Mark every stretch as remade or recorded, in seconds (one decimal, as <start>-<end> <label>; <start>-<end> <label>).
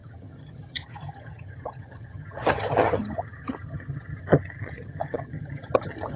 0.0-6.2 remade